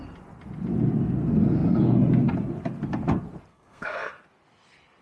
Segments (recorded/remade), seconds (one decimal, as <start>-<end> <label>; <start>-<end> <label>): 0.0-3.5 recorded; 3.5-4.1 remade; 4.1-5.0 recorded